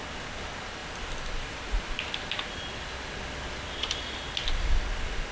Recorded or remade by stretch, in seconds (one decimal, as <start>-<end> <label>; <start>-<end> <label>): 0.0-5.3 recorded